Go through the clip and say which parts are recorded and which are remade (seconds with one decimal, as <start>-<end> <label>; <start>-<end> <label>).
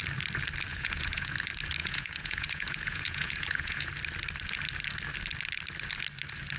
0.0-0.7 recorded; 0.7-1.3 remade; 1.3-1.8 recorded; 1.8-3.9 remade; 3.9-6.6 recorded